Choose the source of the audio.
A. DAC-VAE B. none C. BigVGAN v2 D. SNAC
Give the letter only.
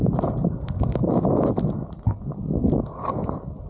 B